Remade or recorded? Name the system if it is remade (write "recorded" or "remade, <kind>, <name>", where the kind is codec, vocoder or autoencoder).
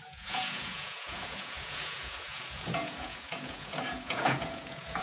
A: remade, vocoder, Vocos